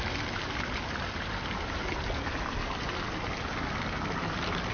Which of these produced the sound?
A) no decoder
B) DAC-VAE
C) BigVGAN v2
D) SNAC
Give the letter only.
A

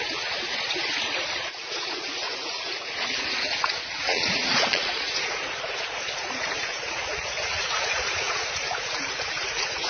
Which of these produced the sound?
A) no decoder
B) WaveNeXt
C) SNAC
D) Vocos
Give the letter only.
D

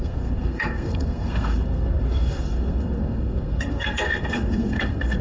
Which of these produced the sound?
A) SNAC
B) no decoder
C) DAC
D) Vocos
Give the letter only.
A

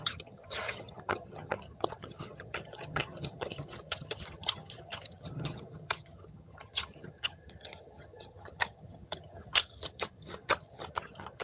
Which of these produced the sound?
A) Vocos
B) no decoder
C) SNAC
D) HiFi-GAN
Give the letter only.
D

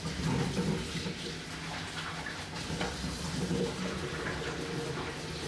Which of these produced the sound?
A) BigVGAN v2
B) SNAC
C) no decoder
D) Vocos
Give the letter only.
C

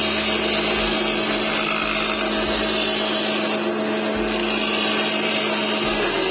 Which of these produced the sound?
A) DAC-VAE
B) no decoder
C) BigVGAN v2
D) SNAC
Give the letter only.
B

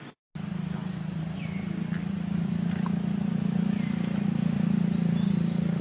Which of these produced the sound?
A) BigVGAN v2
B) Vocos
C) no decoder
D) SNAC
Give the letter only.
C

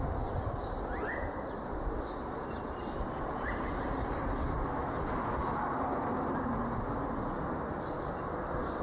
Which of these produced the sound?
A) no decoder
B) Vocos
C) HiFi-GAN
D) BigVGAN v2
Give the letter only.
A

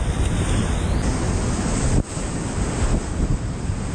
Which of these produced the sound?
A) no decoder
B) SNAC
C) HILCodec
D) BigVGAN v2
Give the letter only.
A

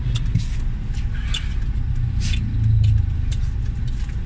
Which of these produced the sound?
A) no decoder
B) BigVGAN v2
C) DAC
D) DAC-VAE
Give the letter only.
A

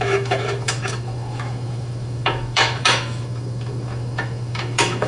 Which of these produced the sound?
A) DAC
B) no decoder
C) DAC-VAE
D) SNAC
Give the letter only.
C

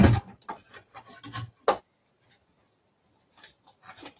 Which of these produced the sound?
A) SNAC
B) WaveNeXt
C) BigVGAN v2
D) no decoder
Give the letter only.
D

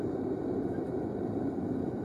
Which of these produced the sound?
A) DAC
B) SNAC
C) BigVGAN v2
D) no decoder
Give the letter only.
D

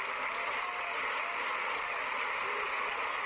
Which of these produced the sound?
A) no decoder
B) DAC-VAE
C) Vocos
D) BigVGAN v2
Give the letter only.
A